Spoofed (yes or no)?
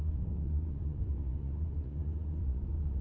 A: yes